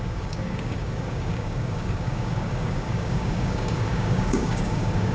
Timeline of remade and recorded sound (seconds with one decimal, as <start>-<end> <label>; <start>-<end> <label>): 0.0-5.1 remade